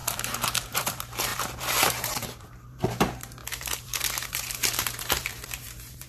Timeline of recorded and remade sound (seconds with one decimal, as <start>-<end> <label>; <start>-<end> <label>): 0.0-3.4 remade; 3.4-4.0 recorded; 4.0-6.1 remade